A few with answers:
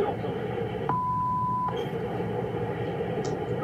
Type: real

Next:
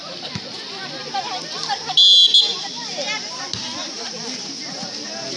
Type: real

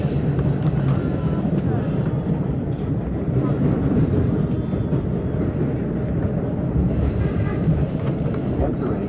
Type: real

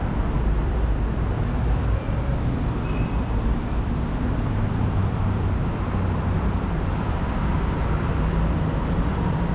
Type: fake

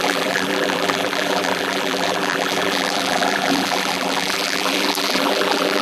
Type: fake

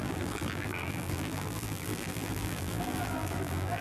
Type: fake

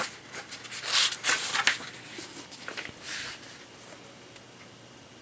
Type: real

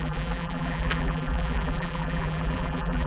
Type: fake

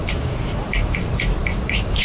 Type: fake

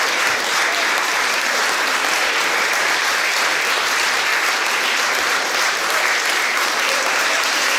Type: fake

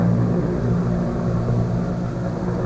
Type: real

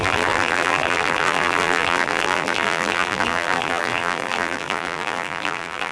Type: fake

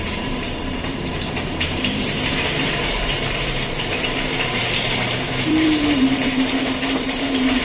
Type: fake